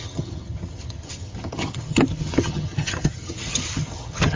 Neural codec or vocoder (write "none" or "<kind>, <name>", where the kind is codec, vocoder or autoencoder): vocoder, HiFi-GAN